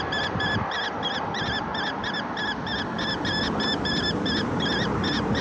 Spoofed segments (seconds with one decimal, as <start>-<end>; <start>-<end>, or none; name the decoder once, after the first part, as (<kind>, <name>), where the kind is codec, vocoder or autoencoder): none